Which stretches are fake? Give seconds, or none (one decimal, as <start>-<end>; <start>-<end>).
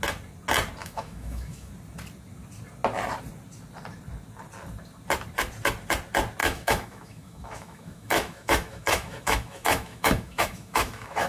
0.8-1.7; 6.4-11.3